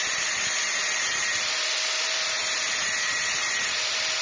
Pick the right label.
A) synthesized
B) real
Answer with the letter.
A